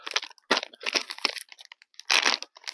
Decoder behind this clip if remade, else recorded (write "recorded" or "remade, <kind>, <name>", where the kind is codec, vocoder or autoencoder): recorded